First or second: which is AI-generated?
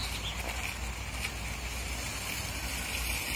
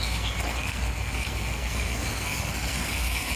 second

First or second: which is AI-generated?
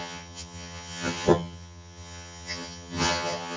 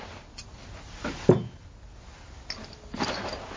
first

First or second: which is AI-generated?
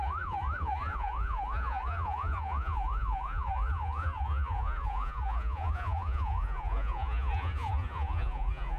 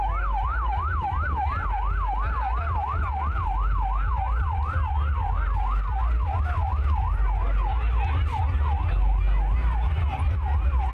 first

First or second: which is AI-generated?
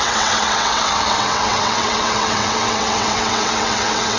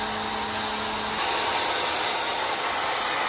first